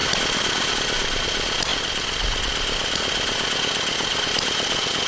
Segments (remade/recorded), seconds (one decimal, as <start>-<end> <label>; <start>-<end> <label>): 0.0-5.1 recorded